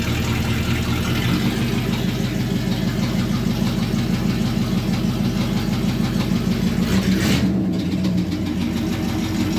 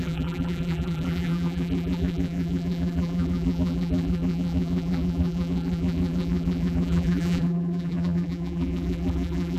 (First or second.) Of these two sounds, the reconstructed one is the second